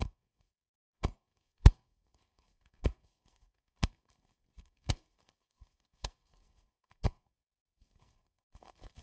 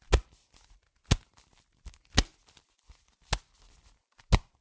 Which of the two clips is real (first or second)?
second